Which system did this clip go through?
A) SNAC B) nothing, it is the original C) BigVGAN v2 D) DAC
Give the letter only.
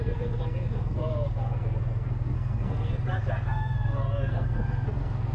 A